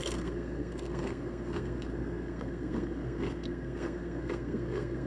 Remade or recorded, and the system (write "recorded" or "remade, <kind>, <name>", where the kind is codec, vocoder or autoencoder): remade, codec, SNAC